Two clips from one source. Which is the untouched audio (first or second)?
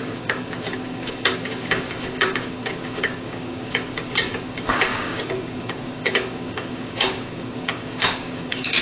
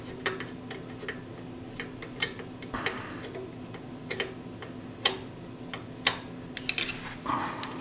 second